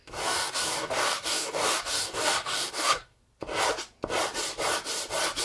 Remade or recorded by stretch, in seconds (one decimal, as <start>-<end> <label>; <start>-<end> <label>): 0.0-3.2 remade; 3.2-5.4 recorded